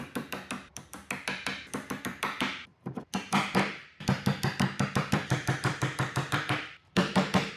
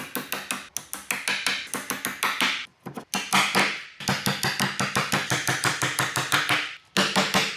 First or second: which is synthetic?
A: first